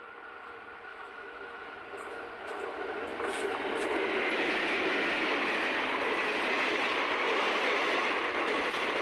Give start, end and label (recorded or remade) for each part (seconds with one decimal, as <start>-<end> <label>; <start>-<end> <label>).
0.0-0.9 recorded; 0.9-1.8 remade; 1.8-9.0 recorded